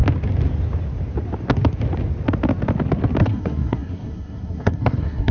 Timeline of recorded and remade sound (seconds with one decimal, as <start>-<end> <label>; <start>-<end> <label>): 0.0-3.2 recorded; 3.2-5.3 remade

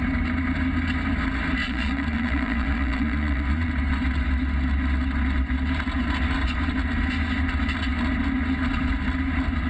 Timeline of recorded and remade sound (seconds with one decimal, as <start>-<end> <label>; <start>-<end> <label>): 0.0-1.6 recorded; 1.6-3.7 remade; 3.7-9.7 recorded

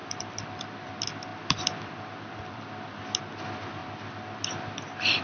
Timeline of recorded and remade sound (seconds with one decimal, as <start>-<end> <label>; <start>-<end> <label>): 0.0-0.9 remade; 0.9-1.3 recorded; 1.3-3.0 remade; 3.0-5.2 recorded